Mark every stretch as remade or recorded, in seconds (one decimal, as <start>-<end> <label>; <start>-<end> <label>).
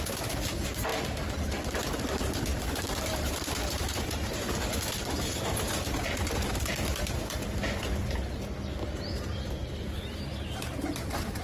0.0-11.4 recorded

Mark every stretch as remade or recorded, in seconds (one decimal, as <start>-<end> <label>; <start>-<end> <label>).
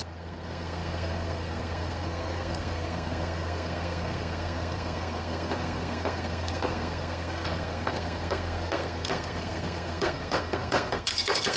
0.0-11.6 remade